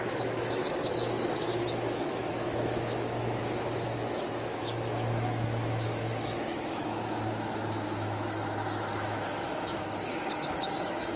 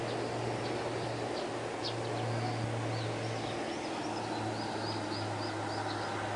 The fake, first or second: first